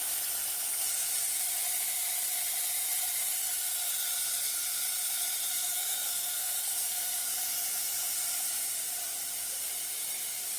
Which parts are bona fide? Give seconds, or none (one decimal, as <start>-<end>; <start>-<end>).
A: 0.0-5.5; 7.3-10.6